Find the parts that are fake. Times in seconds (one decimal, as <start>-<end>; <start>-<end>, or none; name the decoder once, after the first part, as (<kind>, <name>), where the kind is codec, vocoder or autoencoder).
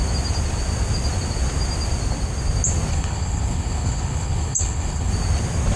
2.9-5.1 (codec, HILCodec)